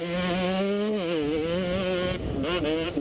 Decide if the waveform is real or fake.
real